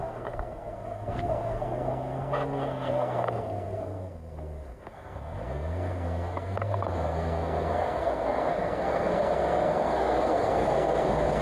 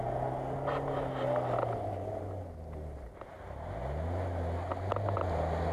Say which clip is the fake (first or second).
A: first